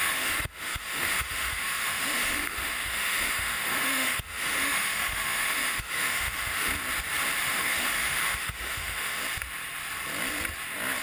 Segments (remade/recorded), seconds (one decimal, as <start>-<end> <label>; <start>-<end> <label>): 0.0-6.7 remade; 6.7-7.4 recorded; 7.4-9.2 remade; 9.2-11.0 recorded